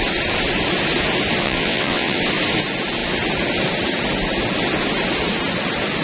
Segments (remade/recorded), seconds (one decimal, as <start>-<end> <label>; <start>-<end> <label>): 0.0-1.4 recorded; 1.4-2.2 remade; 2.2-6.0 recorded